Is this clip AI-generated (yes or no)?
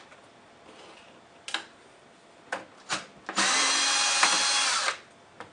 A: no